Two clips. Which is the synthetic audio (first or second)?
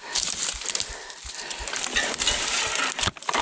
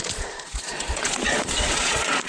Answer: second